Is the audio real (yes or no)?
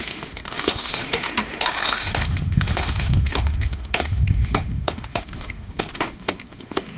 no